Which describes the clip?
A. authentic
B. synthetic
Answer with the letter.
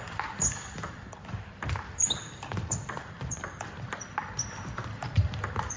B